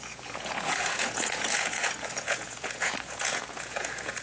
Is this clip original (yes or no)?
no